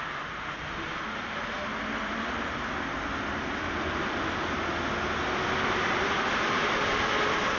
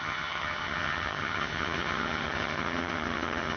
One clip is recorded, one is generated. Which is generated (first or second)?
second